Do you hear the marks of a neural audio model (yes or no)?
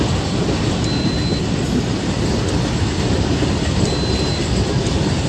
no